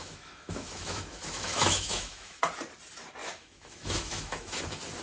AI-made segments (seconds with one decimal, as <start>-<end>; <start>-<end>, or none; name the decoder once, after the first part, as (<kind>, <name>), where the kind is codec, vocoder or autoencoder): 0.0-2.4 (autoencoder, DAC-VAE); 3.2-4.6